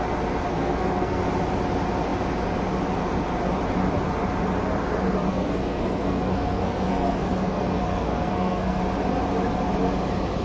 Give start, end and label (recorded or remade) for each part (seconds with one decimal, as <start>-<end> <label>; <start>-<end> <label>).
0.0-0.5 recorded; 0.5-1.2 remade; 1.2-5.3 recorded; 5.3-8.8 remade; 8.8-10.4 recorded